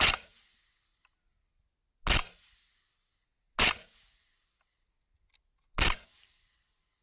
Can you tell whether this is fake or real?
real